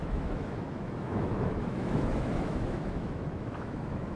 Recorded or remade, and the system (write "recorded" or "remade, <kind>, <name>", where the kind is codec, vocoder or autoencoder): remade, autoencoder, DAC-VAE